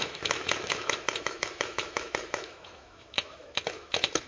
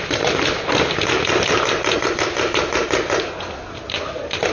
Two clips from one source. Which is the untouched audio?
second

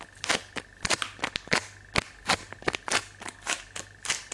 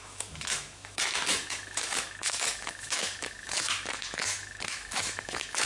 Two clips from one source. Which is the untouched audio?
first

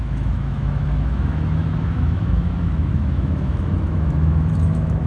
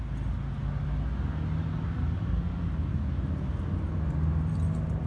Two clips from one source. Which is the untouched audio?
second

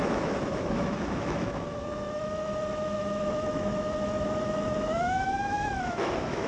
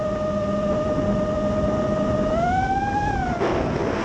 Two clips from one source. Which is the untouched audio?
second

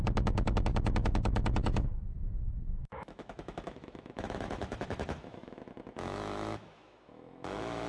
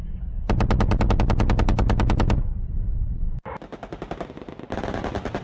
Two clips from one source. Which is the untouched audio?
second